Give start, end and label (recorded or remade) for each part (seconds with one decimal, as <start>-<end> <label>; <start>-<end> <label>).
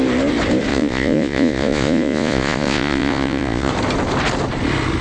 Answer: 0.0-0.7 recorded; 0.7-3.7 remade; 3.7-5.0 recorded